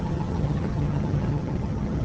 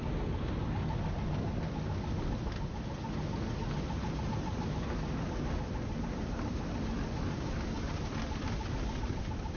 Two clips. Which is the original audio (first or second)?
second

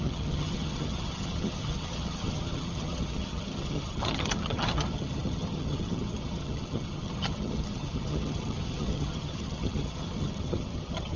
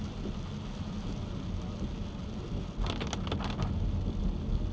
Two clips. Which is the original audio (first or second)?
second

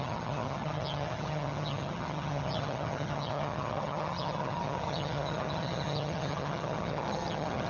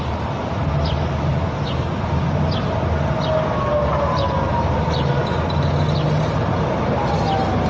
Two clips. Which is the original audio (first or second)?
second